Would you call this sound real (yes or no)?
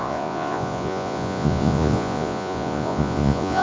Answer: no